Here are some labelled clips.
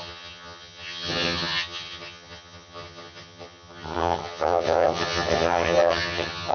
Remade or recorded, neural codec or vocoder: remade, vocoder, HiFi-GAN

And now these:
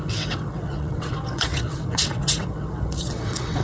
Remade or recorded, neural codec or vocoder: remade, vocoder, WaveNeXt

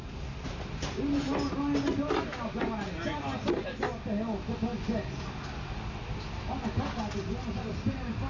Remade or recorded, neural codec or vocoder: recorded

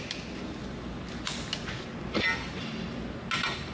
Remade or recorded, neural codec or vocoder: recorded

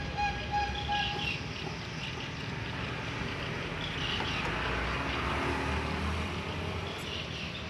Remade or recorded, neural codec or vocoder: recorded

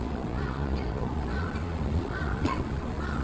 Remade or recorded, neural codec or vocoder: remade, vocoder, Vocos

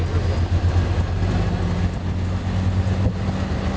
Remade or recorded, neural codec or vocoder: recorded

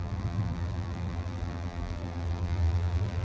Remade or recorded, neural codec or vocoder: remade, vocoder, BigVGAN v2